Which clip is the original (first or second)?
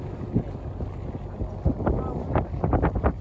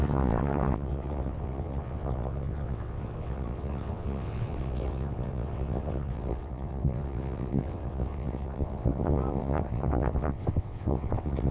first